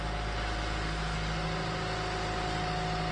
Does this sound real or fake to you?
real